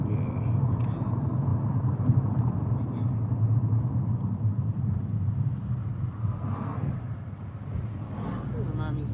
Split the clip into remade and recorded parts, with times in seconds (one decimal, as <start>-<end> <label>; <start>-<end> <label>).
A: 0.0-6.2 recorded; 6.2-6.9 remade; 6.9-9.1 recorded